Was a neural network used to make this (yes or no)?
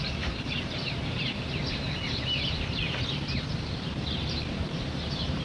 yes